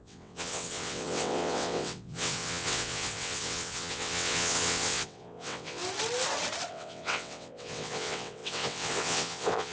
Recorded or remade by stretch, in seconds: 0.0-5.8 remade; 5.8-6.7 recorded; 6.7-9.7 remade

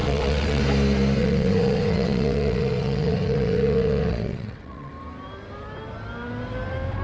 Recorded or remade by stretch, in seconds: 0.0-0.6 remade; 0.6-1.2 recorded; 1.2-4.9 remade; 4.9-7.0 recorded

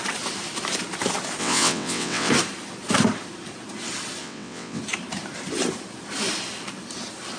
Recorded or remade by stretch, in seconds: 0.0-1.4 recorded; 1.4-2.3 remade; 2.3-4.2 recorded; 4.2-4.8 remade; 4.8-7.4 recorded

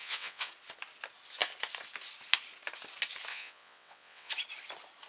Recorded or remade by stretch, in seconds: 0.0-0.5 remade; 0.5-3.3 recorded; 3.3-4.3 remade; 4.3-5.1 recorded